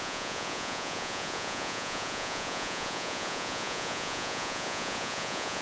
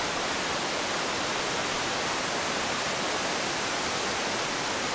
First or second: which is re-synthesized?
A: first